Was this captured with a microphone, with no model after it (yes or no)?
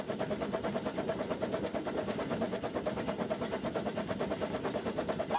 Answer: yes